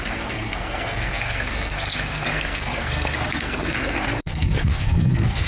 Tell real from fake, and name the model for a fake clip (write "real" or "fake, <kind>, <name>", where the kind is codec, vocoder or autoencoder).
fake, codec, SNAC